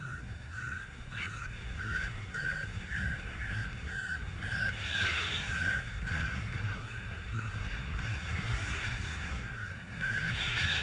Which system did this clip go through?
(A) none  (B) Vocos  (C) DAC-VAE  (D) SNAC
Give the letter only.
D